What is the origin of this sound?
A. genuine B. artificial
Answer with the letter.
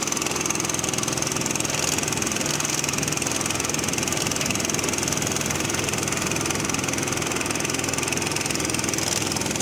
A